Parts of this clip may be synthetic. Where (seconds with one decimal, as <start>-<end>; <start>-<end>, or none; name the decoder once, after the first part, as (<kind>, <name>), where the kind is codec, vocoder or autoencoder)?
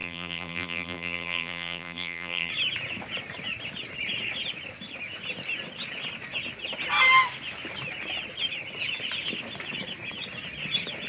0.0-2.5 (vocoder, BigVGAN v2)